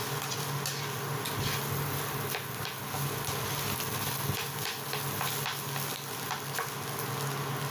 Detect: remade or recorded recorded